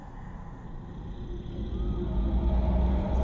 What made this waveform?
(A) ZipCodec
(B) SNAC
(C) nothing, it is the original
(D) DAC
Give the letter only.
C